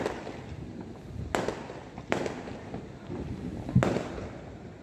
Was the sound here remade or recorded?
recorded